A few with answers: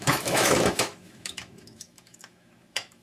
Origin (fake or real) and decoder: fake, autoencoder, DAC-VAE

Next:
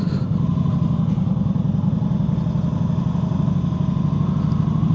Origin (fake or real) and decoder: real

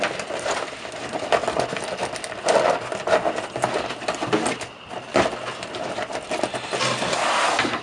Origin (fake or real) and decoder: real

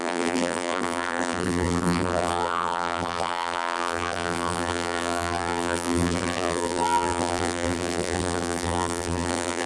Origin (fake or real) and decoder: fake, vocoder, BigVGAN v2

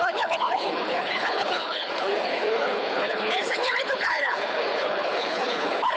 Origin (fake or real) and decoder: fake, codec, HILCodec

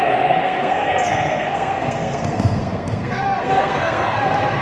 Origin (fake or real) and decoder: fake, codec, SNAC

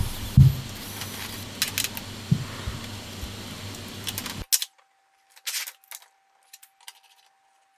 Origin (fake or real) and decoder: real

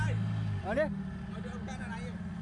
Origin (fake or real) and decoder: real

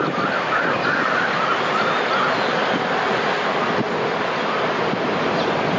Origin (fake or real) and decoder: real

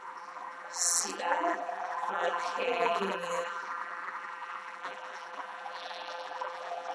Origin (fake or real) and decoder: fake, vocoder, BigVGAN v2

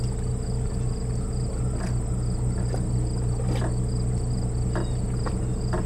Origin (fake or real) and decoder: real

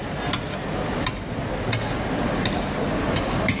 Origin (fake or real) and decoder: real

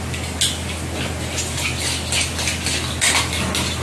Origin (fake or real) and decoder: real